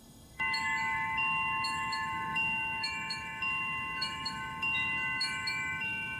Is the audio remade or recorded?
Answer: remade